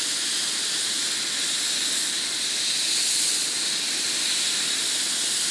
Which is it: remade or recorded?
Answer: recorded